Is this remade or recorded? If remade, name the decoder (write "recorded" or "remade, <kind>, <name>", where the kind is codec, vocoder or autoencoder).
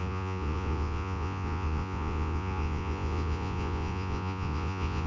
remade, vocoder, Vocos